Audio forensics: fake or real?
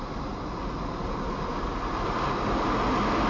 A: real